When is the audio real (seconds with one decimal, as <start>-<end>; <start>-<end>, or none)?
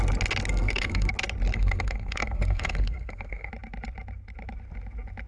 0.0-0.5; 1.1-1.5; 3.5-5.3